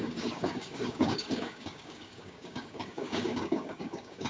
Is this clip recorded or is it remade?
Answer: remade